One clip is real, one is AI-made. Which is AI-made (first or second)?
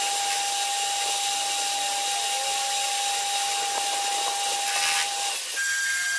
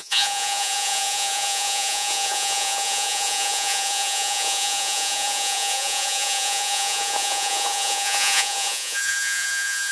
second